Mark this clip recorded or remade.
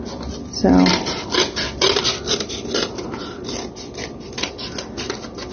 recorded